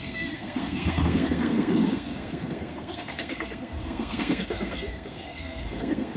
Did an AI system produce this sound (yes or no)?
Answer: yes